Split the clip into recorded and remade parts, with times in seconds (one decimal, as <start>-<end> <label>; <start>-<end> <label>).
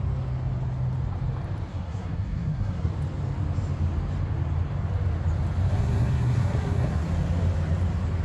0.0-1.7 recorded; 1.7-2.9 remade; 2.9-5.7 recorded; 5.7-7.0 remade; 7.0-8.2 recorded